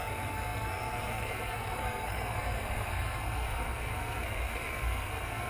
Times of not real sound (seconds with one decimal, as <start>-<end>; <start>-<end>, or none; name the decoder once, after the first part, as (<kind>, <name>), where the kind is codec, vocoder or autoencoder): 0.0-5.5 (codec, SNAC)